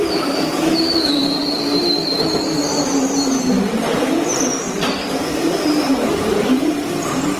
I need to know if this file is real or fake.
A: fake